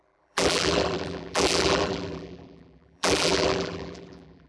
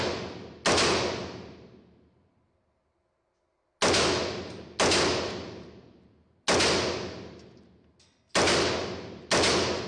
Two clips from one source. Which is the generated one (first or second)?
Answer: first